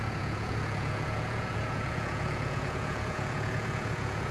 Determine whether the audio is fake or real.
fake